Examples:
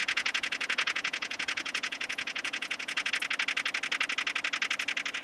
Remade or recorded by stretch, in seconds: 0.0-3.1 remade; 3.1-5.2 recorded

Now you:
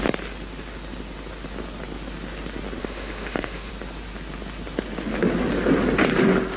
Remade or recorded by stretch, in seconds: 0.0-2.8 recorded; 2.8-3.7 remade; 3.7-6.6 recorded